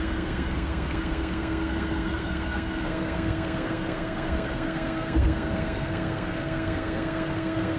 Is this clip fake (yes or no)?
yes